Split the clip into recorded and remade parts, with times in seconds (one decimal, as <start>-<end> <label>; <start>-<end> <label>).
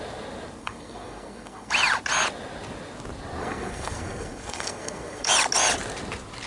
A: 0.0-0.6 recorded; 0.6-1.7 remade; 1.7-3.4 recorded; 3.4-5.3 remade; 5.3-6.5 recorded